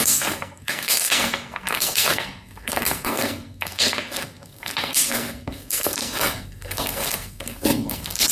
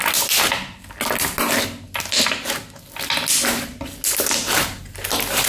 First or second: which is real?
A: second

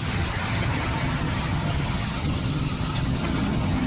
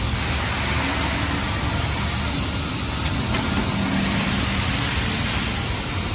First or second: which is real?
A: second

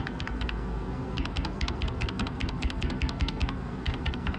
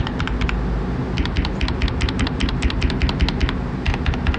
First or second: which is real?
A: second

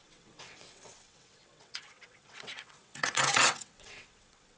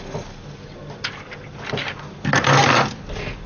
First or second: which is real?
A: second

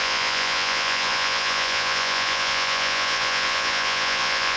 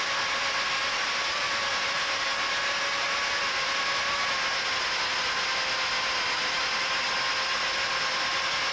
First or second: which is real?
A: second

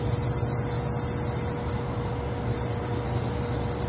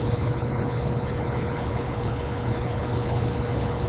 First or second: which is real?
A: first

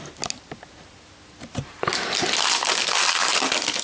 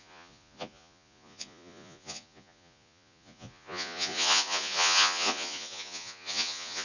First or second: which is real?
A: first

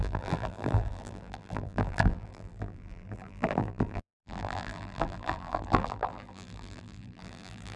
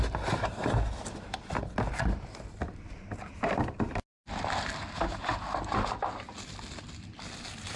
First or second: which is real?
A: second